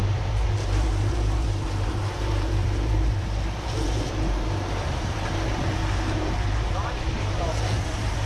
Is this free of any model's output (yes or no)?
no